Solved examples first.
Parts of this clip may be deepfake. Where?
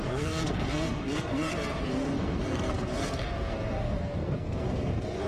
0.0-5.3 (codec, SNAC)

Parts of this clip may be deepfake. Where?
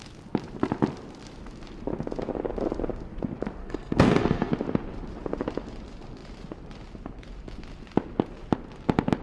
3.6-4.5 (codec, SNAC)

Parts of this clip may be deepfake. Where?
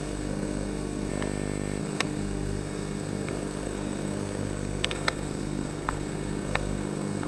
0.0-1.1 (codec, SNAC); 1.8-7.3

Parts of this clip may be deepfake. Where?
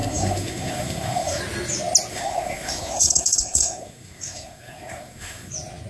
0.0-1.4 (codec, SNAC); 2.1-5.5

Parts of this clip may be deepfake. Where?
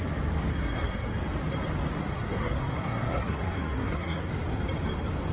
0.5-1.2 (codec, SNAC); 2.0-4.3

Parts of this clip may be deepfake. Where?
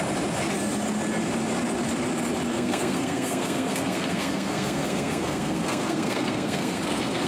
2.5-7.3 (codec, SNAC)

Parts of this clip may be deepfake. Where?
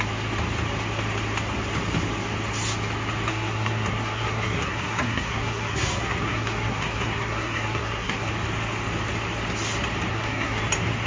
3.3-8.3 (codec, SNAC); 10.1-10.6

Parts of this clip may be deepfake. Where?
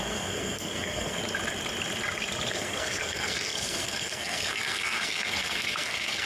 0.0-1.2 (codec, SNAC); 2.5-6.3